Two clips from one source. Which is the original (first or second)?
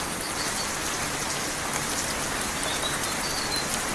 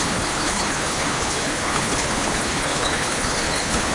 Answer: first